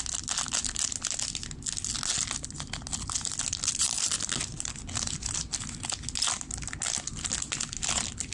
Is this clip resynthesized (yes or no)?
no